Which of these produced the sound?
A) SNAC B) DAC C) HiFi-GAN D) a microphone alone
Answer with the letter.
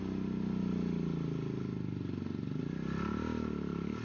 D